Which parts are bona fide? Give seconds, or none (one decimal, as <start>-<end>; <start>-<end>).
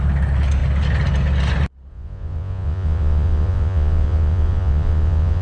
0.0-1.9